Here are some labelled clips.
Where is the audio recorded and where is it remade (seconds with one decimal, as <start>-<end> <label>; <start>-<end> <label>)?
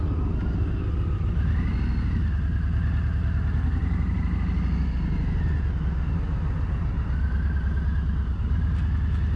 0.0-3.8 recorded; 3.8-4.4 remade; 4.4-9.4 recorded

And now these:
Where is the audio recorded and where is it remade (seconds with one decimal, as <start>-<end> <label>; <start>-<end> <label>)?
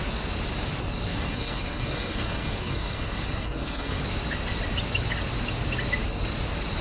0.0-1.1 recorded; 1.1-4.0 remade; 4.0-6.8 recorded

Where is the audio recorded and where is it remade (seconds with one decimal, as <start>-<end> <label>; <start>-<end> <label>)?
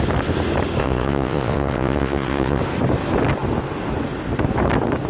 0.0-0.8 recorded; 0.8-2.6 remade; 2.6-5.1 recorded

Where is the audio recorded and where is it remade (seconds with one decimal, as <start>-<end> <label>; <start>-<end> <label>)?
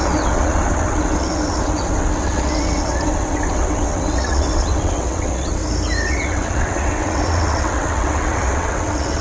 0.0-5.6 remade; 5.6-6.1 recorded; 6.1-9.2 remade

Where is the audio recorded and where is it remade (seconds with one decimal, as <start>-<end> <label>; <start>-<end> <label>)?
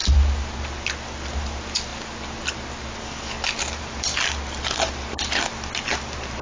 0.0-6.4 recorded